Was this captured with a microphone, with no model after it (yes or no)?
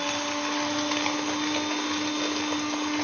yes